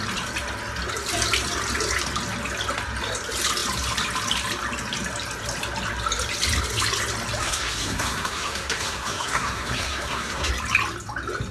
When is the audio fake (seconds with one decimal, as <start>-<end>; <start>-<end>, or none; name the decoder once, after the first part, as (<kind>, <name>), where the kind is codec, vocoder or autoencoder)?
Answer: 7.4-10.5 (codec, SNAC)